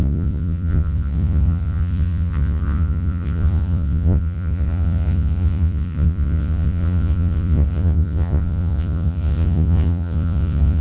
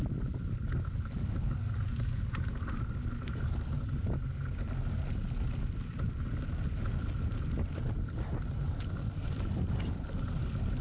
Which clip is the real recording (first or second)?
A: second